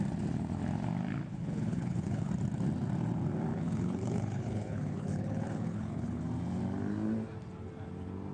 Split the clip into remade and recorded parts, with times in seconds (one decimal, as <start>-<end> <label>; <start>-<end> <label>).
0.0-1.3 recorded; 1.3-2.3 remade; 2.3-3.5 recorded; 3.5-6.2 remade; 6.2-8.3 recorded